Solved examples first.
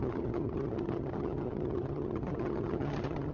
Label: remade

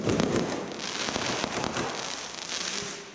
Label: recorded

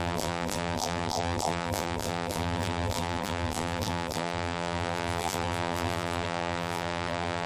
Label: remade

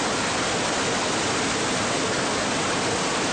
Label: recorded